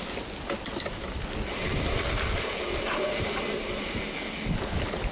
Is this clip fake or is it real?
real